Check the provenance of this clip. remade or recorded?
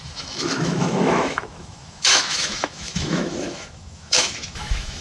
remade